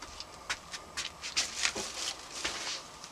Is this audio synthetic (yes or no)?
no